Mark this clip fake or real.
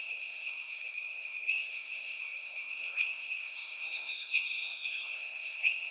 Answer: fake